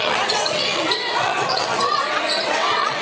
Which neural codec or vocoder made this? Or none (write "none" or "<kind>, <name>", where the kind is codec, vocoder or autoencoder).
vocoder, WaveNeXt